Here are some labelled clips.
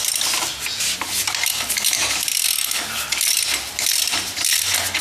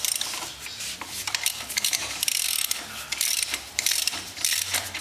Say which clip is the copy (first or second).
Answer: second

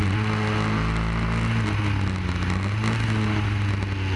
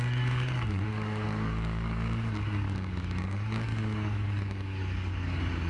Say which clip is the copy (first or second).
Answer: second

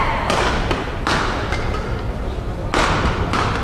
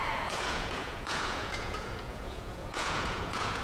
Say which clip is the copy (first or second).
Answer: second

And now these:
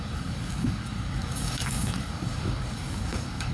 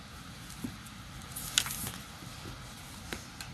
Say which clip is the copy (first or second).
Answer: first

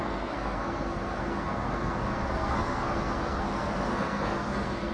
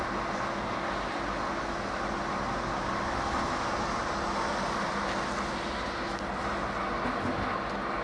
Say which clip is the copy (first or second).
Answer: first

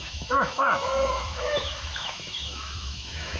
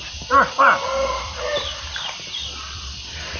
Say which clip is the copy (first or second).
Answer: first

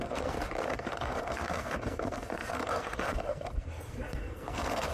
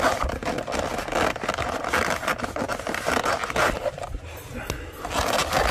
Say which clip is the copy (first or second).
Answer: first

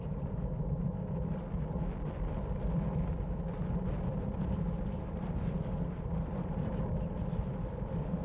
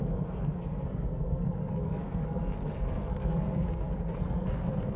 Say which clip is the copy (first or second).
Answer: second